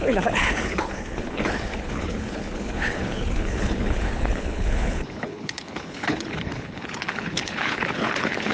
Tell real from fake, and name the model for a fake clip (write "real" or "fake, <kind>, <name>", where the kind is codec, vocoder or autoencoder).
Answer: fake, codec, HILCodec